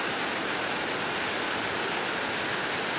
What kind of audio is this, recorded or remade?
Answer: recorded